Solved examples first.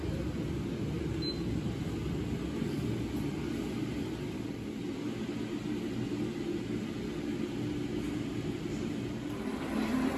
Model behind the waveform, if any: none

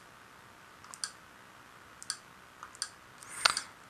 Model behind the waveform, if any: none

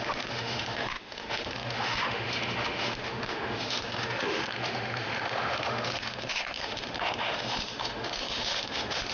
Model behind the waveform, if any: autoencoder, DAC-VAE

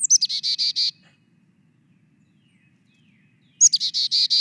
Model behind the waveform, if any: none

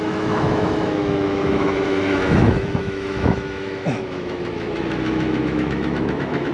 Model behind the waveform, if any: autoencoder, DAC-VAE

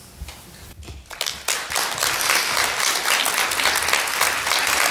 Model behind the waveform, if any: none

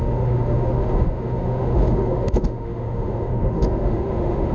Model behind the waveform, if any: autoencoder, DAC-VAE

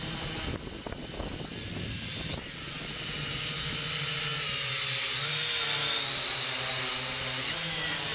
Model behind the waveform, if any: none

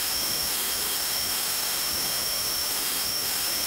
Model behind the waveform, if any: autoencoder, DAC-VAE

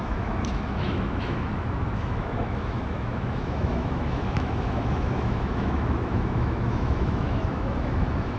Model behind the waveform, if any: autoencoder, DAC-VAE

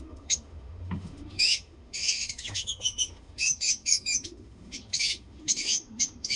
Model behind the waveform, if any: autoencoder, DAC-VAE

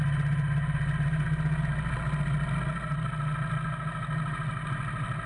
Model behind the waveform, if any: none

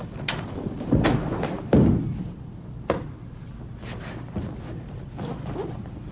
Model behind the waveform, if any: none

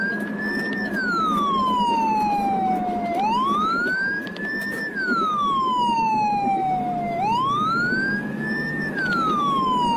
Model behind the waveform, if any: autoencoder, DAC-VAE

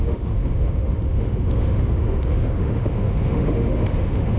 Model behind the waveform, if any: autoencoder, DAC-VAE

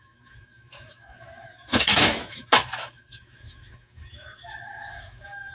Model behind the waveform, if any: autoencoder, DAC-VAE